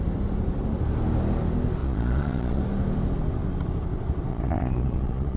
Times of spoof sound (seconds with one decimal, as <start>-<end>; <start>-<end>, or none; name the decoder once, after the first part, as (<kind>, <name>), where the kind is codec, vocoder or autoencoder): 1.8-2.6 (vocoder, Vocos); 4.3-5.4